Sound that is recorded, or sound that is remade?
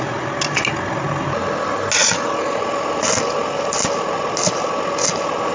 recorded